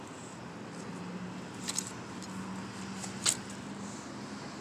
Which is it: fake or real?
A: real